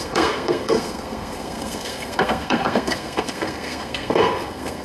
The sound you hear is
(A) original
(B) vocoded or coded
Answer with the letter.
B